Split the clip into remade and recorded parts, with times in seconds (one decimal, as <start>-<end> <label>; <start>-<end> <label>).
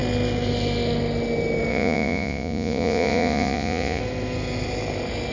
0.0-1.7 recorded; 1.7-4.0 remade; 4.0-5.3 recorded